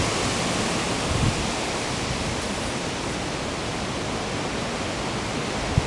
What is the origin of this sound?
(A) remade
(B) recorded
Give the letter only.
B